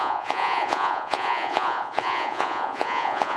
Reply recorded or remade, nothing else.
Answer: remade